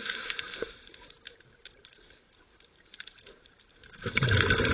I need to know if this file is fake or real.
fake